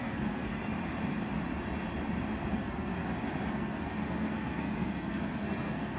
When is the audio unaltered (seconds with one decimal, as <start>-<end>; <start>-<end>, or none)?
0.5-2.5; 3.0-3.5